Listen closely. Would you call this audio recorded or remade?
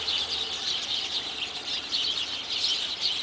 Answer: remade